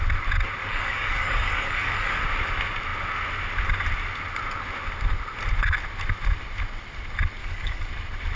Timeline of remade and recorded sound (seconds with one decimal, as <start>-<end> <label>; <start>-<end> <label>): 0.0-0.6 recorded; 0.6-2.2 remade; 2.2-7.4 recorded; 7.4-7.9 remade; 7.9-8.4 recorded